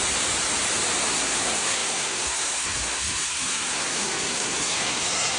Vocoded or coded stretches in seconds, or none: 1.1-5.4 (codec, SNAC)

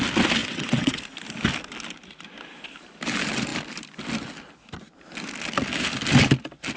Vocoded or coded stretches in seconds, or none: 0.4-1.0 (vocoder, WaveNeXt)

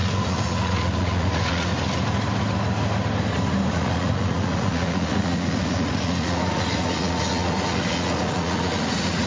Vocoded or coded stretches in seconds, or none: 0.0-1.7 (vocoder, Vocos); 3.7-9.3